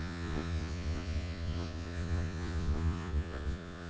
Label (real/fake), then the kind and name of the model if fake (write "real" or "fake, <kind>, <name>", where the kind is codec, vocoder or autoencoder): fake, vocoder, Vocos